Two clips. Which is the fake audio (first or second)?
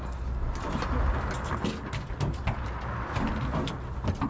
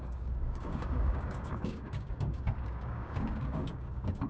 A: second